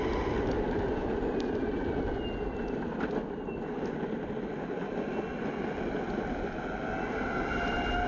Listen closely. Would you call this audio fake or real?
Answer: real